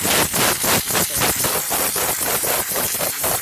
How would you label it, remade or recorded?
recorded